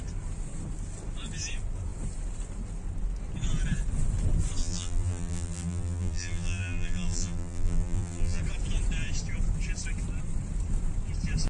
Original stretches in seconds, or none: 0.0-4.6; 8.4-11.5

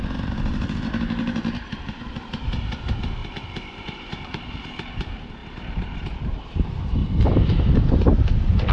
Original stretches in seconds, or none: 3.2-3.7; 7.0-8.7

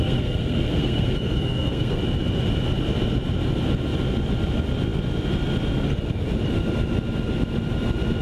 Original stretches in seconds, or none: 2.0-8.2